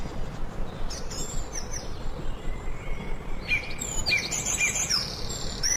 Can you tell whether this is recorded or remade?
recorded